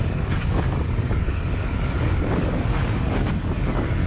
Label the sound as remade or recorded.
remade